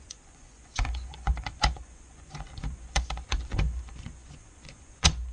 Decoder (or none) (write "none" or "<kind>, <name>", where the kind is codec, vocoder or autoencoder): vocoder, Vocos